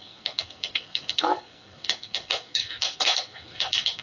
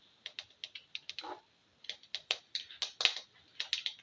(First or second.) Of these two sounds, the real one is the second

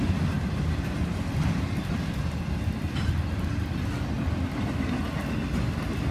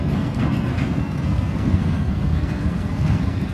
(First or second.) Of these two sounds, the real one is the first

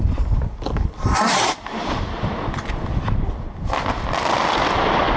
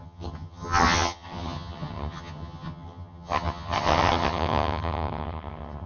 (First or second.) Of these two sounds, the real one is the first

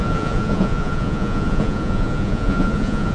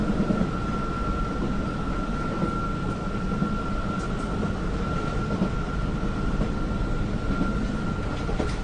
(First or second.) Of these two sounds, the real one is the second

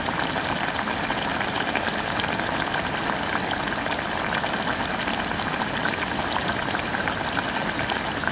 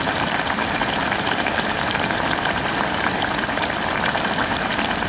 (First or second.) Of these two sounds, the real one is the first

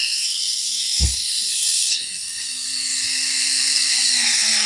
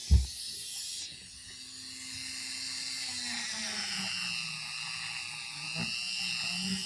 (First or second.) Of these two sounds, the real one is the second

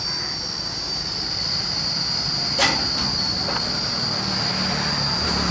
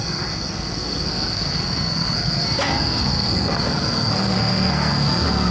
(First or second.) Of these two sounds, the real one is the first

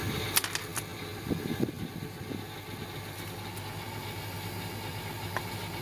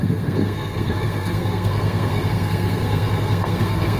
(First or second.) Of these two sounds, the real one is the first